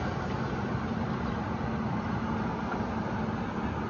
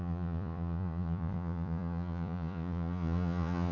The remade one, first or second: second